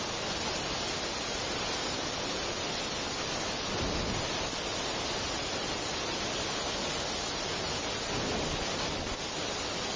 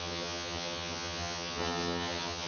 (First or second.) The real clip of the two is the first